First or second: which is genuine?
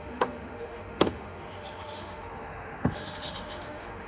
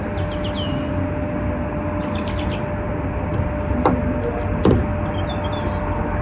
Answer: second